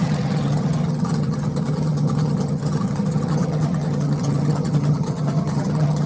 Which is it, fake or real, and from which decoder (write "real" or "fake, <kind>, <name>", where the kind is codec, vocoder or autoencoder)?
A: fake, vocoder, HiFi-GAN